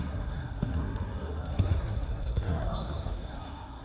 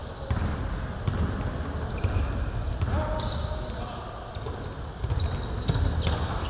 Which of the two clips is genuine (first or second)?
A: second